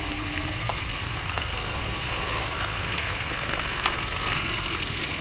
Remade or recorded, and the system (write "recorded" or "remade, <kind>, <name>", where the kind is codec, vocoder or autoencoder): remade, codec, SNAC